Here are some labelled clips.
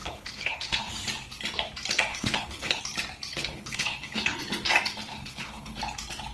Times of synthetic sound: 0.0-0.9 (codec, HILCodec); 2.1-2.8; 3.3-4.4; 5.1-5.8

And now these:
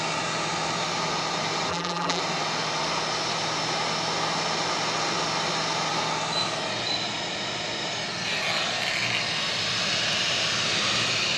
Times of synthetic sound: 1.7-2.2 (vocoder, BigVGAN v2)

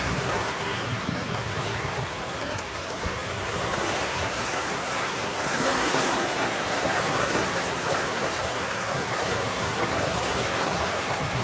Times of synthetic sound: 0.0-11.4 (codec, SNAC)